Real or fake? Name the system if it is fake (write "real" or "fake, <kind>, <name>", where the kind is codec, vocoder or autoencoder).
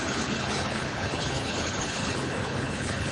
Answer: fake, codec, HILCodec